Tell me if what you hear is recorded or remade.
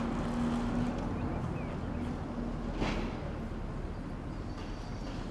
recorded